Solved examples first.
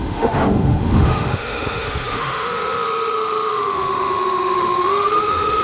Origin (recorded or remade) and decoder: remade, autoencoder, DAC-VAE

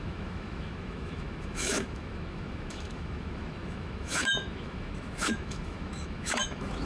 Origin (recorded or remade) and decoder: remade, autoencoder, DAC-VAE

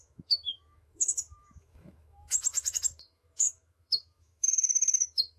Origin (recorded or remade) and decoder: remade, autoencoder, DAC-VAE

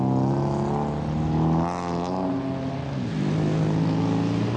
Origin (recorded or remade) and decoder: recorded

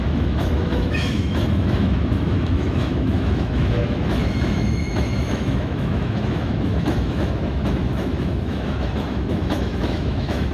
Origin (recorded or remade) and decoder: remade, autoencoder, DAC-VAE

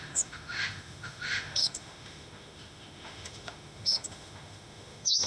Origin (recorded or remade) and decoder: remade, autoencoder, DAC-VAE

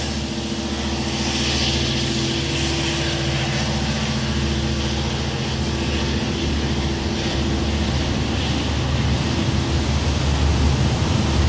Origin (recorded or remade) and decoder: recorded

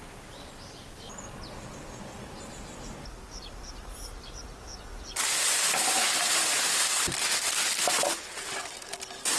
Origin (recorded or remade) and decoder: recorded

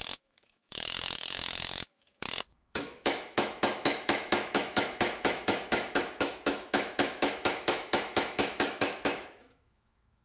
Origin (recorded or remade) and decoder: remade, autoencoder, DAC-VAE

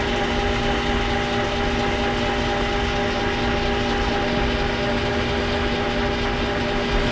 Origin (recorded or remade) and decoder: recorded